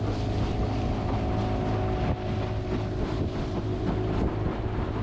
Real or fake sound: real